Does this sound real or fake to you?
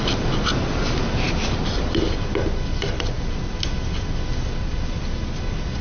real